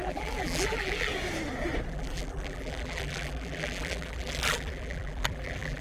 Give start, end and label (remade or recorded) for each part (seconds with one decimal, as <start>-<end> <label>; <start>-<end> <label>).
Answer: 0.0-1.1 remade; 1.1-1.9 recorded; 1.9-5.8 remade